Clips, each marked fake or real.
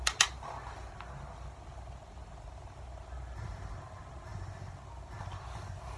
real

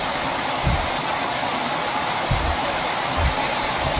real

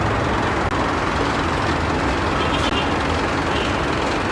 real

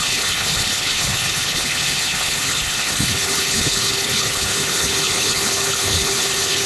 fake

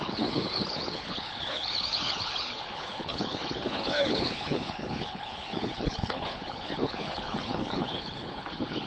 fake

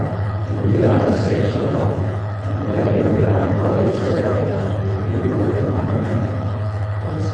fake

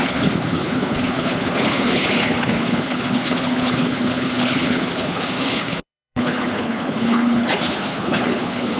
fake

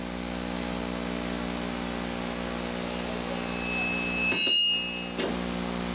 real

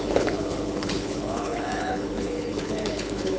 fake